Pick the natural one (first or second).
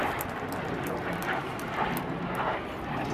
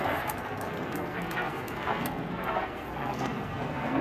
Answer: first